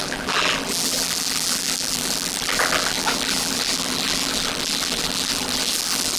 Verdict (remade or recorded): remade